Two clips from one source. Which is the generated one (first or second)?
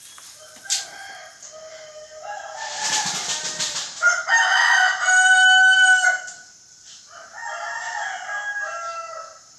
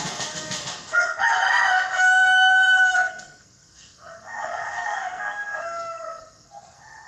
second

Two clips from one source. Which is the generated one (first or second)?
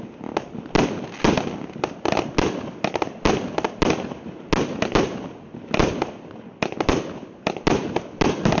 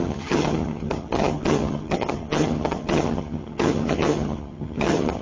second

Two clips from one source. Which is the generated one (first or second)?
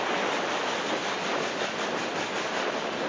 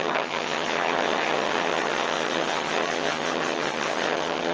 second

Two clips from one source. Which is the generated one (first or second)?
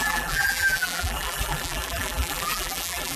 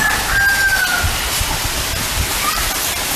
first